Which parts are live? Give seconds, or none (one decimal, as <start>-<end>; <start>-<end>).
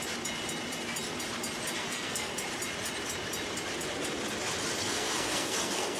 0.0-1.8; 2.3-4.8